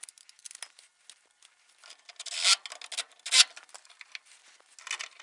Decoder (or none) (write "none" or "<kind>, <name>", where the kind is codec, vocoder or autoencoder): none